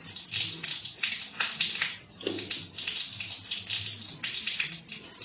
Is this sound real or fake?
fake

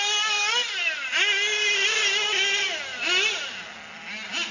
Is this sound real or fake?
real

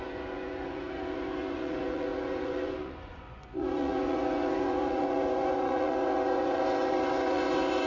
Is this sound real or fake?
fake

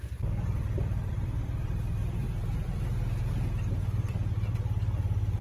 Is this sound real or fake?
fake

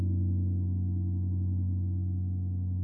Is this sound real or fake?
real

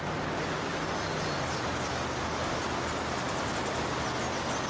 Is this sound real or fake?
real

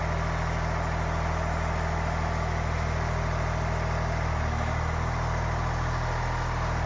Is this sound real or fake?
real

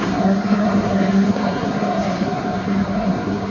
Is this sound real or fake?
fake